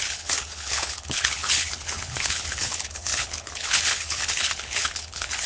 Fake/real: fake